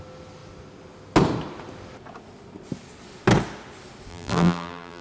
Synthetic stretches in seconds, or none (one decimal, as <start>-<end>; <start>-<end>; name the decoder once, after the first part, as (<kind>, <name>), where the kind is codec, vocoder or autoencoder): 4.1-5.0 (vocoder, BigVGAN v2)